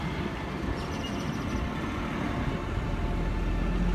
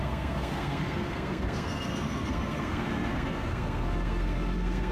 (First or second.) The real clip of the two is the first